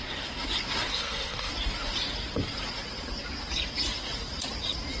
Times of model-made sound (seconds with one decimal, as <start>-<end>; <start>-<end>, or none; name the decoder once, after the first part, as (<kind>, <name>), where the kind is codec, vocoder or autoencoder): 0.9-1.5 (codec, SNAC)